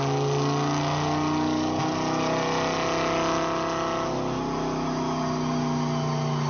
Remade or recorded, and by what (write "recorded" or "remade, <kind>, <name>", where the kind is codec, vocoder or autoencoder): recorded